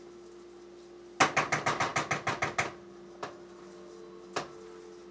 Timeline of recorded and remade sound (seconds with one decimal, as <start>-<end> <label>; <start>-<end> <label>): 0.0-5.1 recorded